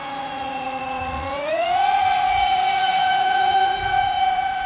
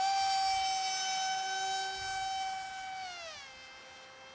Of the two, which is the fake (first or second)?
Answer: first